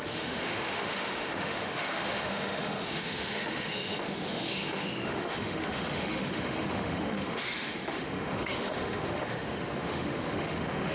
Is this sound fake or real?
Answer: fake